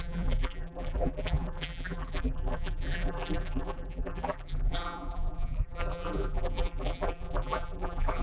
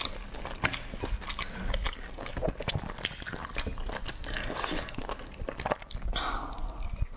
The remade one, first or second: first